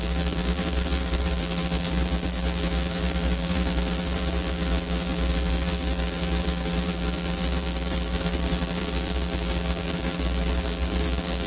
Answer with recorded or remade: remade